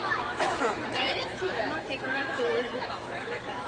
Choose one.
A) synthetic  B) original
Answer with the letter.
A